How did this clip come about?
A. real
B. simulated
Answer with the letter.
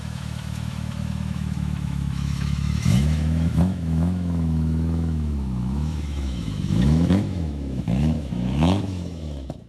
B